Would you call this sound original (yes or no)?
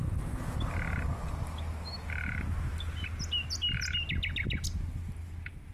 yes